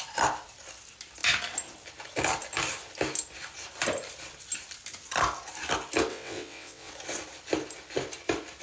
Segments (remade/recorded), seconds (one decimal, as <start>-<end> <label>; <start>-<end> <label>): 0.0-6.1 recorded; 6.1-6.9 remade; 6.9-8.6 recorded